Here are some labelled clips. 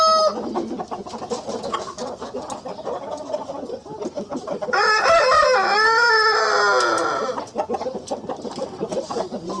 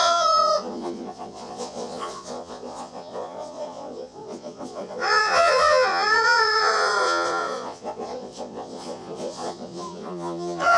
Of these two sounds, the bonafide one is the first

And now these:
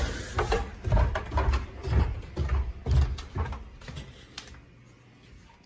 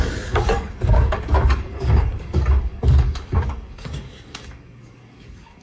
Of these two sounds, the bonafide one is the first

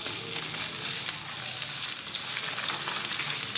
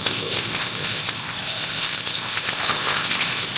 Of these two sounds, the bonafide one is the first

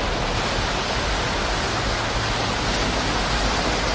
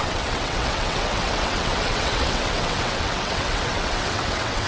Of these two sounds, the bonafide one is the first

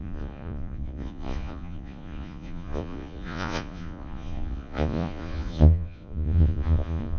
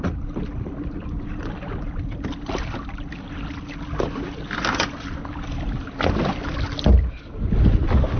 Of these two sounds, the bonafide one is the second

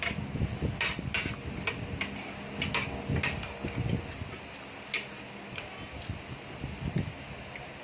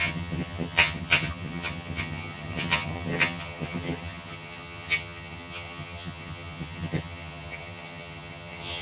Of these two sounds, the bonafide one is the first